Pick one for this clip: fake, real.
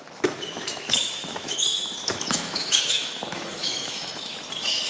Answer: fake